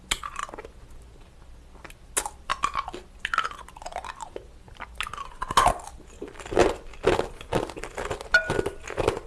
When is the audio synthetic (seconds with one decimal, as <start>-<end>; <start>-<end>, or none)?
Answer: none